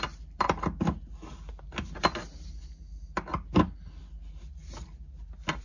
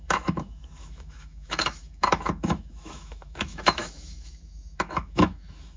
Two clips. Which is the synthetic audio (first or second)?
second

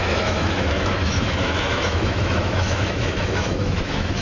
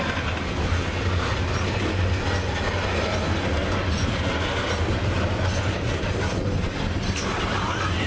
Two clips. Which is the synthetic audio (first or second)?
first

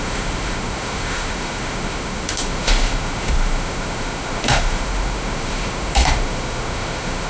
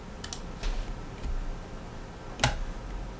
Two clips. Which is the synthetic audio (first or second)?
first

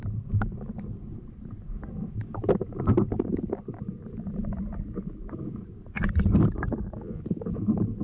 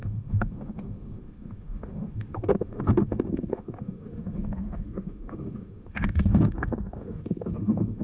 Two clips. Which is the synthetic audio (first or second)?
second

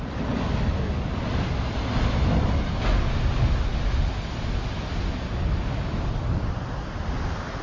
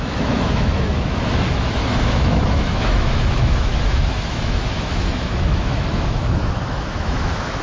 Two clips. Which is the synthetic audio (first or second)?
second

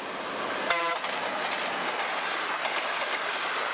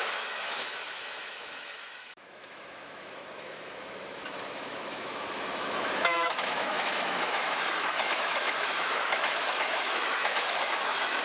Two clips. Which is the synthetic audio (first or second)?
second